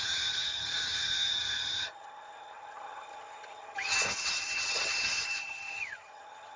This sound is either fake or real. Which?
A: fake